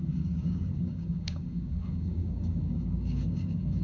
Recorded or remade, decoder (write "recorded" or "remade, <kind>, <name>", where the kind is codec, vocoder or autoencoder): remade, codec, DAC